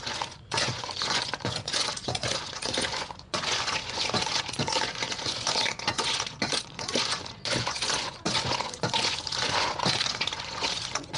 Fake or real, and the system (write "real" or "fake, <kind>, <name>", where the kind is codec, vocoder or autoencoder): fake, vocoder, Vocos